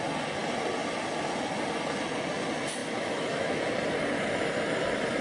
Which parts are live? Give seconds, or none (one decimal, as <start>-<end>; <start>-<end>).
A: 0.0-2.8; 3.6-5.2